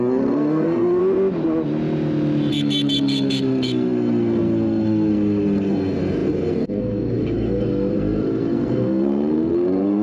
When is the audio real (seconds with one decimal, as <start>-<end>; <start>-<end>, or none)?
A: 1.0-2.5